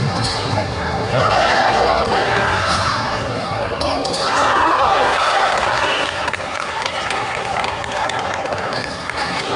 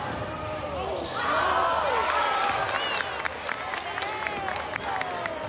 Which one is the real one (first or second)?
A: second